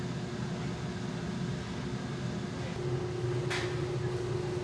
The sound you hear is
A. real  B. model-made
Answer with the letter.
A